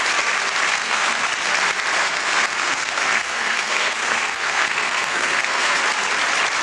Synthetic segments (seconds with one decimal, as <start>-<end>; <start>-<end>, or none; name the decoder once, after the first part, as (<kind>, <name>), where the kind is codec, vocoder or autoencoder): 0.7-1.3 (codec, SNAC); 2.0-5.8